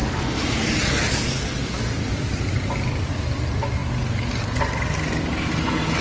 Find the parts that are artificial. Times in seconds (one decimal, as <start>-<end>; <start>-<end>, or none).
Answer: none